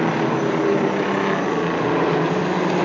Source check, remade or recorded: recorded